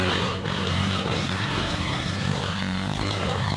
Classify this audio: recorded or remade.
remade